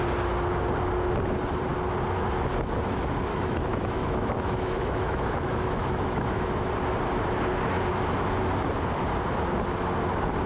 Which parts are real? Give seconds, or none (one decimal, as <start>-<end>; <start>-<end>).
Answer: 0.0-3.3; 6.7-10.5